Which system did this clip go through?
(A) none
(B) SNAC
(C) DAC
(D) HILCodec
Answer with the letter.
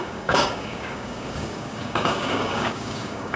C